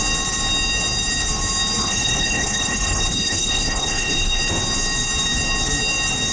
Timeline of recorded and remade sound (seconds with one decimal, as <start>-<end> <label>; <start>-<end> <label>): 0.0-1.8 recorded; 1.8-4.4 remade; 4.4-6.3 recorded